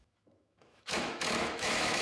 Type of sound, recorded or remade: remade